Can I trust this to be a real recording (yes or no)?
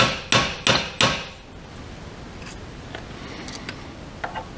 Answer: yes